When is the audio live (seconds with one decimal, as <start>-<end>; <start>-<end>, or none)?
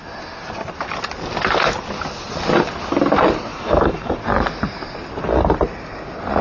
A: 0.0-3.5; 4.1-6.4